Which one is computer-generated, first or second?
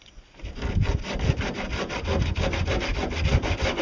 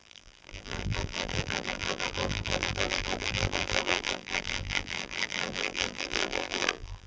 second